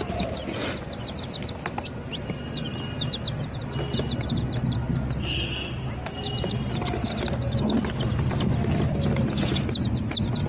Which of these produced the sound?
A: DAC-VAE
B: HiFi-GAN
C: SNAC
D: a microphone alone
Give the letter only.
D